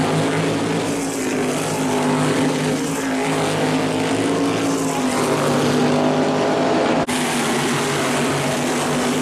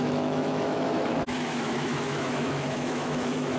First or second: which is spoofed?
second